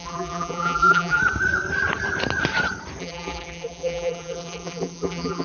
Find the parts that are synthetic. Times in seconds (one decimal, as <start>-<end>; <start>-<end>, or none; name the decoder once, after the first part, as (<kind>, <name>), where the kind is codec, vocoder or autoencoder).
0.0-1.2 (vocoder, BigVGAN v2); 3.0-5.4